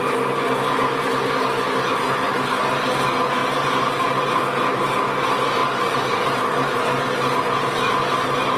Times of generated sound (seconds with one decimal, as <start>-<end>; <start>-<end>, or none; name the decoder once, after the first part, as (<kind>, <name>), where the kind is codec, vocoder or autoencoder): 3.4-4.4 (vocoder, BigVGAN v2); 5.6-7.4

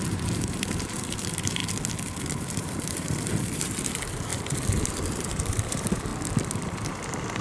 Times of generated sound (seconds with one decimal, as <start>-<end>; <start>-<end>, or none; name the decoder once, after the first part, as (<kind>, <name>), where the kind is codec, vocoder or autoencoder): 0.0-1.6 (vocoder, BigVGAN v2); 2.4-6.1; 6.6-7.4

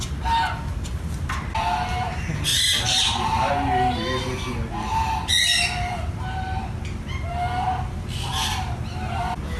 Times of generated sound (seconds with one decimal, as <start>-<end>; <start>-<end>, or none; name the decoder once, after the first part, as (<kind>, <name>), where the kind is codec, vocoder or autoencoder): 2.5-3.5 (vocoder, BigVGAN v2)

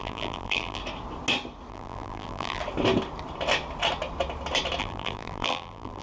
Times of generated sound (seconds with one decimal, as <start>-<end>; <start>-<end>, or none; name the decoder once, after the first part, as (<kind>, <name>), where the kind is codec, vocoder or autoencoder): 0.0-0.8 (vocoder, BigVGAN v2); 1.7-2.6; 4.8-6.0

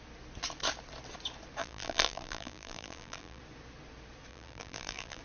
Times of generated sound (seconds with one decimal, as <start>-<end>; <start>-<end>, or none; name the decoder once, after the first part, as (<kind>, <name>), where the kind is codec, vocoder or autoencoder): 1.6-3.4 (vocoder, BigVGAN v2); 4.3-5.2